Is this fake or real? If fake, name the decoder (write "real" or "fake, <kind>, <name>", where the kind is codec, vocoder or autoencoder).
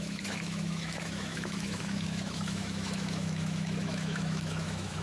fake, autoencoder, DAC-VAE